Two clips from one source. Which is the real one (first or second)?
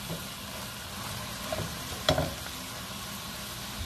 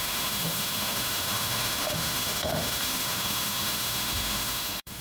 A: first